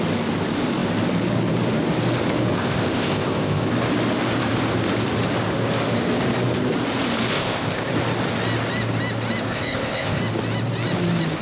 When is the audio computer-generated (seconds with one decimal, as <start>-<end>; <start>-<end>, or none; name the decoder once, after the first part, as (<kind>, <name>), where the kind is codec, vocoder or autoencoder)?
2.5-3.7 (codec, ZipCodec); 7.3-7.9; 9.5-10.2